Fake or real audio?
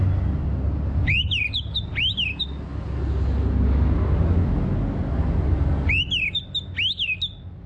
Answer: real